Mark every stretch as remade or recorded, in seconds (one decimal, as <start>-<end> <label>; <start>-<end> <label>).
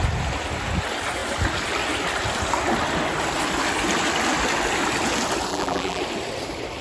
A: 0.0-5.5 recorded; 5.5-6.0 remade; 6.0-6.8 recorded